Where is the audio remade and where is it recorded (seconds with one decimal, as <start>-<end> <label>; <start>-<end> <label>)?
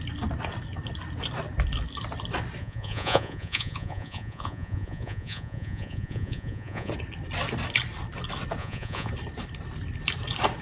0.0-2.6 recorded; 2.6-6.9 remade; 6.9-8.6 recorded; 8.6-9.1 remade; 9.1-10.6 recorded